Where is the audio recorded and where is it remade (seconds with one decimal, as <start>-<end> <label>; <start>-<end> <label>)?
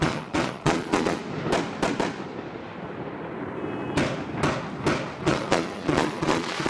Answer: 0.0-1.2 remade; 1.2-5.2 recorded; 5.2-6.7 remade